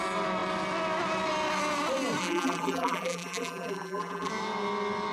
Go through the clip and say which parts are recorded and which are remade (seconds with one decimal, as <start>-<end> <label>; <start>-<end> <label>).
0.0-2.2 recorded; 2.2-4.3 remade; 4.3-5.1 recorded